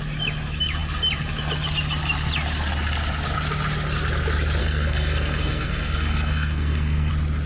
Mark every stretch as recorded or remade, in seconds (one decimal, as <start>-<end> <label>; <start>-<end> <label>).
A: 0.0-4.6 recorded; 4.6-7.1 remade; 7.1-7.5 recorded